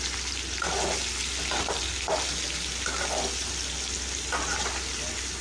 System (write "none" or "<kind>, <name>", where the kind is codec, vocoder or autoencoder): none